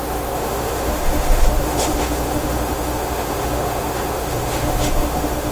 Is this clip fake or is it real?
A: fake